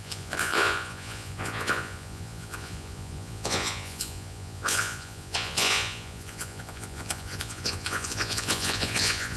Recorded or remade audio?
remade